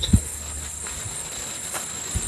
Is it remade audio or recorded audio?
recorded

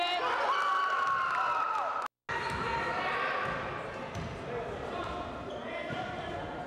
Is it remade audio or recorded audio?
recorded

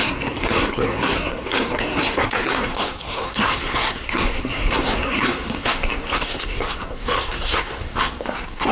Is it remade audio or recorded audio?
remade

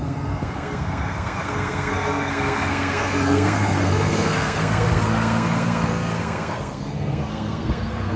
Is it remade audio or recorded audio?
remade